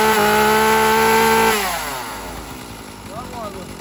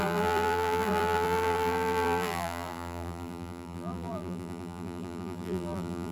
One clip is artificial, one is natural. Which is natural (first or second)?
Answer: first